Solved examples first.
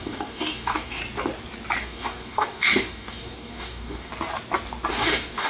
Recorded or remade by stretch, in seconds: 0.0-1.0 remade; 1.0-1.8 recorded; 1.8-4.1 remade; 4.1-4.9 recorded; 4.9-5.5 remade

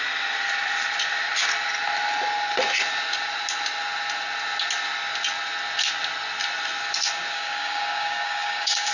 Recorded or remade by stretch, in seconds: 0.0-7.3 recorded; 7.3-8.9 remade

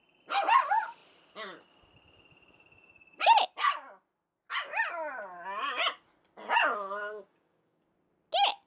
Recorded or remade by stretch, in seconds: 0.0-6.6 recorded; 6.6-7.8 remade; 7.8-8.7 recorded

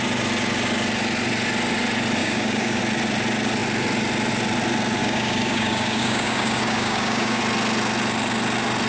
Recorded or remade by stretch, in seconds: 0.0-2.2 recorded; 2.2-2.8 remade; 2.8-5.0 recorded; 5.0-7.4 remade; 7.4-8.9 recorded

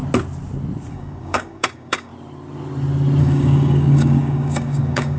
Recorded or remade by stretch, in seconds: 0.0-0.9 recorded; 0.9-2.1 remade; 2.1-3.2 recorded; 3.2-5.2 remade

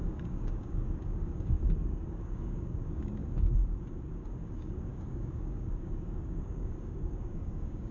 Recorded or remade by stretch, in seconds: 0.0-7.9 remade